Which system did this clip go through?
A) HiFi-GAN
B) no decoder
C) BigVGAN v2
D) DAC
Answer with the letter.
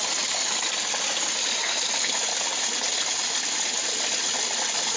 B